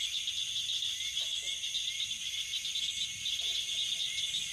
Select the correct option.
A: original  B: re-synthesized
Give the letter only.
A